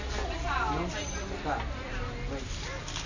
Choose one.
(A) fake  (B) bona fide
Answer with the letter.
B